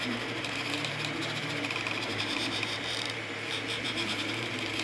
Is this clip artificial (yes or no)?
yes